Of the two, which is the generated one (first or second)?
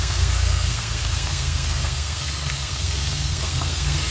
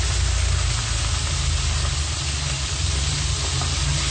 first